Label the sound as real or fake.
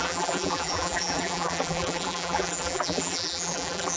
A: fake